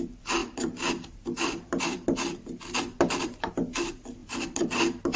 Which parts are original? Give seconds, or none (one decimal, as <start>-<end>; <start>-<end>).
0.0-0.4; 3.5-4.2; 4.8-5.2